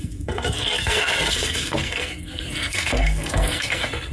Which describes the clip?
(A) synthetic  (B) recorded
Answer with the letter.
A